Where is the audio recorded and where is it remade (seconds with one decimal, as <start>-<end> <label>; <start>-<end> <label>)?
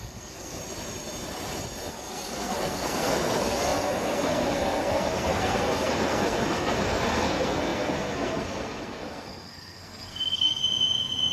0.0-0.6 remade; 0.6-1.9 recorded; 1.9-10.6 remade; 10.6-11.3 recorded